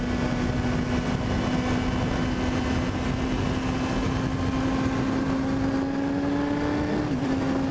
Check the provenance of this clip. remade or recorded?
recorded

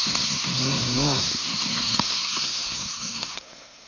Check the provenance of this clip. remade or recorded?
remade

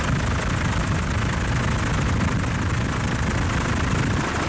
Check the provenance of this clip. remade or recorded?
recorded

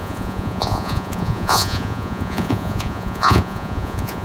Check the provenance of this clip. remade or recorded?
remade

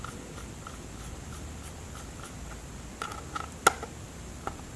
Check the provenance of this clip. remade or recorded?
recorded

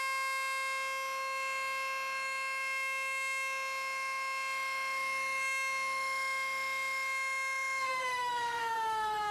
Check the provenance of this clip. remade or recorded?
remade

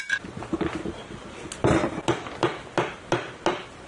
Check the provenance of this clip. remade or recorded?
recorded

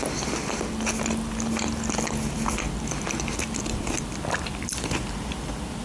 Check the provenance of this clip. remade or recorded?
recorded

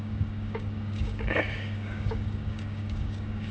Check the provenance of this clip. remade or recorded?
remade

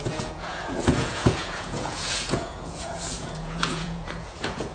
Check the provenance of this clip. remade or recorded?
remade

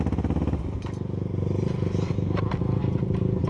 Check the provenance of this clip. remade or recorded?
recorded